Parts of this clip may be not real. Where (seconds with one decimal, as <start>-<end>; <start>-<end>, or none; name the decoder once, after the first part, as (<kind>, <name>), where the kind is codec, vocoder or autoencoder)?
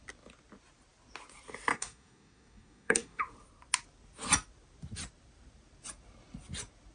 1.7-3.2 (codec, DAC)